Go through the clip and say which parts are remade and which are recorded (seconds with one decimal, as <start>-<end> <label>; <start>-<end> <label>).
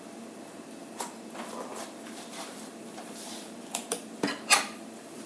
0.0-1.7 recorded; 1.7-5.3 remade